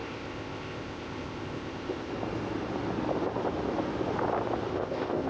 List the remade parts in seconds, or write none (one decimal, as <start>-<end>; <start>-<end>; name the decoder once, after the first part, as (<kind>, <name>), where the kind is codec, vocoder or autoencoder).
0.0-2.1 (codec, ZipCodec); 4.7-5.3

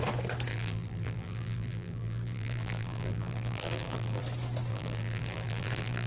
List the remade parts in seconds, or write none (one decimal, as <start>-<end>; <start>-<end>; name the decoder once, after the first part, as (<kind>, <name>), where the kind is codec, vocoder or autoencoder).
0.5-4.2 (vocoder, BigVGAN v2); 4.7-6.1

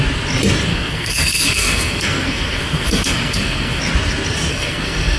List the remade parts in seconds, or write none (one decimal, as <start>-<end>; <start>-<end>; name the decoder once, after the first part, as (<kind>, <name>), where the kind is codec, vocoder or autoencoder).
0.7-3.8 (codec, SNAC); 4.5-5.2